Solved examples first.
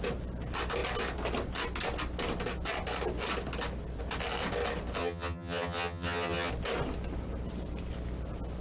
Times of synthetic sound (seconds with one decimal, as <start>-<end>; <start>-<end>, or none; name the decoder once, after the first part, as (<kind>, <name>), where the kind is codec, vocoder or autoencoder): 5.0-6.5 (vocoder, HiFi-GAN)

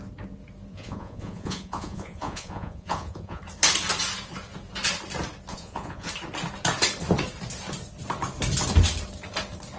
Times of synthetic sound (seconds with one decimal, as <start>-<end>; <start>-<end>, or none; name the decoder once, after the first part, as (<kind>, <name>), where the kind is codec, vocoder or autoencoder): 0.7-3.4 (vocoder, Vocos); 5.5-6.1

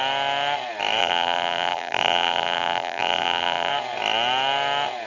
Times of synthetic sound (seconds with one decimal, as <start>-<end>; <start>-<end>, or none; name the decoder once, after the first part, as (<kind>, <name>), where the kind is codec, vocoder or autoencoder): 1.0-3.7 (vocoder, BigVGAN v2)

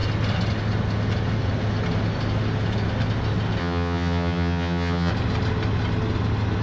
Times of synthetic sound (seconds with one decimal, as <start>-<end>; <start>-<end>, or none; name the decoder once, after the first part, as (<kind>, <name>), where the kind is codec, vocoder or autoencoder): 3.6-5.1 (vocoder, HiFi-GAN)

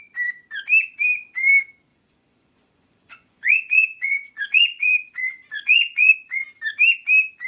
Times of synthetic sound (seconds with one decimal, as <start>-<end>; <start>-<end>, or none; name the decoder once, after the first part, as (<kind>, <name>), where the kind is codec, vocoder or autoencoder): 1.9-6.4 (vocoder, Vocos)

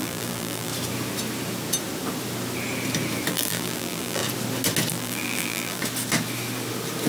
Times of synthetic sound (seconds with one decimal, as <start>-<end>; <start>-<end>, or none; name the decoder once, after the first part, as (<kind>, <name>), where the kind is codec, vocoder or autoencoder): 0.0-0.7 (vocoder, BigVGAN v2); 3.3-4.2; 4.9-5.8